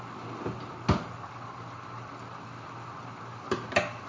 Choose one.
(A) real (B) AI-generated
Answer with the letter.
A